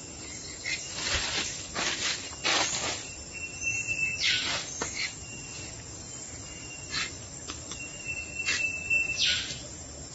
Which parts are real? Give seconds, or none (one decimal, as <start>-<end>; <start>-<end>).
0.0-9.1; 9.7-10.1